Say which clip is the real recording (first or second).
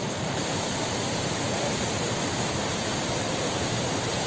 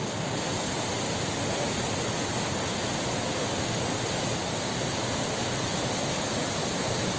second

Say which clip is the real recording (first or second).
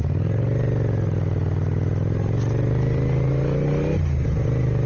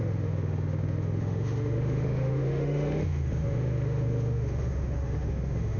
first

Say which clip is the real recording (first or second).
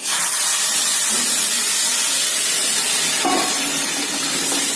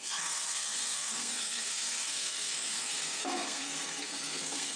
first